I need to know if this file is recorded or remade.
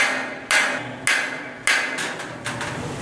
recorded